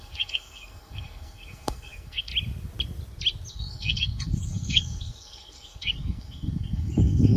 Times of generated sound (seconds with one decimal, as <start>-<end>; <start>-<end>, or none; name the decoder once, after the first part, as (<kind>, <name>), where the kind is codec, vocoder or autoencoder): 0.0-2.3 (codec, SNAC); 3.5-7.4